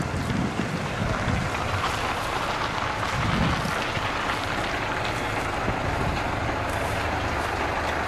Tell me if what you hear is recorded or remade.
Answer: recorded